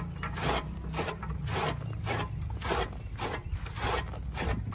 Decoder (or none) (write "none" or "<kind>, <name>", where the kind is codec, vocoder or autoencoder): none